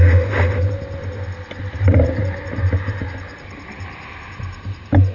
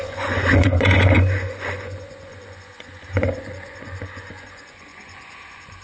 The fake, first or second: second